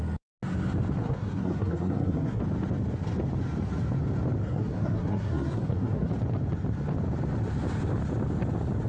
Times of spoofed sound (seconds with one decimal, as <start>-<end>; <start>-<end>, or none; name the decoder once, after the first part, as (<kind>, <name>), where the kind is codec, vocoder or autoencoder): 1.0-2.4 (codec, SNAC); 4.4-6.1

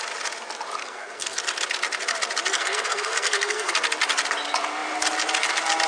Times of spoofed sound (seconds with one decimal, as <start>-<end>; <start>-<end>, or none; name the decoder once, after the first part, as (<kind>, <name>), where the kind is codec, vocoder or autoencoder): 0.8-1.4 (codec, SNAC); 2.5-3.7

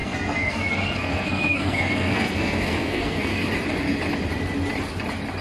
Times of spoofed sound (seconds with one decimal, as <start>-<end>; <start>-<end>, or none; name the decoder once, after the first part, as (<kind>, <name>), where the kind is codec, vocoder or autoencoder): 0.0-3.3 (codec, SNAC)

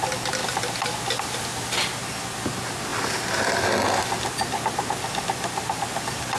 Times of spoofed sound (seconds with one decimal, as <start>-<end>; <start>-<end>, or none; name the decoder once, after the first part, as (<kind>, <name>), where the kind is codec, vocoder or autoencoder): none

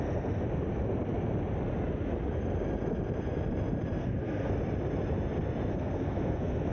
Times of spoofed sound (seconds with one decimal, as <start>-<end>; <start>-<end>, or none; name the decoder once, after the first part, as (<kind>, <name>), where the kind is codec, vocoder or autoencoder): 4.0-4.5 (codec, SNAC); 5.7-6.7

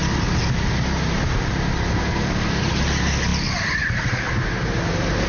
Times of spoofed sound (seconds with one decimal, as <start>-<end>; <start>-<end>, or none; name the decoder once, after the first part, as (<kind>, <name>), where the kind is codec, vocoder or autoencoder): 2.0-2.6 (codec, SNAC)

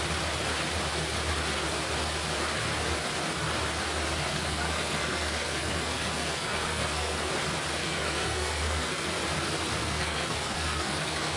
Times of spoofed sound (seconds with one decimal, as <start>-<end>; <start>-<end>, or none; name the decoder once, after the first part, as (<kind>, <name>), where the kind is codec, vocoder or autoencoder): 4.3-7.3 (codec, SNAC); 7.8-9.1; 9.8-11.4